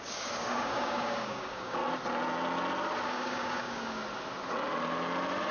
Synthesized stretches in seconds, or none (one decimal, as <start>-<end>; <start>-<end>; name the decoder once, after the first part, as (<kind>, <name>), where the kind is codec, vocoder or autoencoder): 0.0-1.8 (codec, DAC); 3.1-4.0